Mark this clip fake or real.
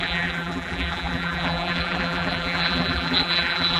fake